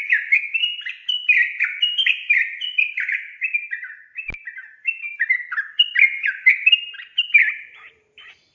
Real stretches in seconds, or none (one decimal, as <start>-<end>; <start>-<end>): 0.6-2.3; 3.1-5.5